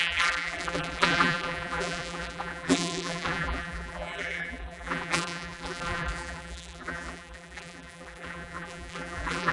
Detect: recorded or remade remade